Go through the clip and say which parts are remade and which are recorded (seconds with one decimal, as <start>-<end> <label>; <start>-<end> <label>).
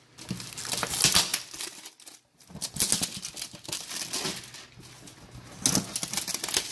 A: 0.0-6.7 recorded